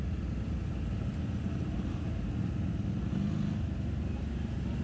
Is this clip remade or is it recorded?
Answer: recorded